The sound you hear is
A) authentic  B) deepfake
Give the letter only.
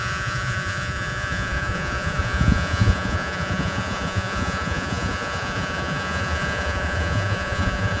B